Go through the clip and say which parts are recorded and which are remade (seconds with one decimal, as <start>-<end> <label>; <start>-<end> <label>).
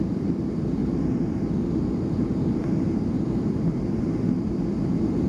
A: 0.0-0.8 remade; 0.8-4.0 recorded; 4.0-5.3 remade